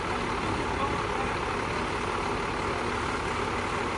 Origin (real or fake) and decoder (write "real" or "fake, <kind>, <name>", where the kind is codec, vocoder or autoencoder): real